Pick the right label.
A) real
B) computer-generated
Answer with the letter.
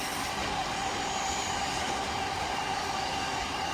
B